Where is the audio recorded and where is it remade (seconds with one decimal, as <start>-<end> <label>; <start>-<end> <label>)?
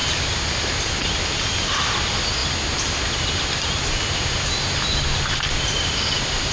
0.0-6.5 recorded